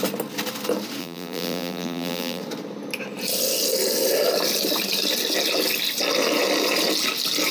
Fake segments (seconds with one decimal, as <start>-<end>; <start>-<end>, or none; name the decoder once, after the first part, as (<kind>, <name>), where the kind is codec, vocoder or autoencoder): 1.0-2.4 (vocoder, BigVGAN v2)